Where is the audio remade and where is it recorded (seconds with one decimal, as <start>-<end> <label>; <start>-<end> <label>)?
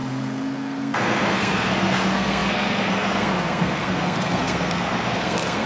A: 0.0-5.7 remade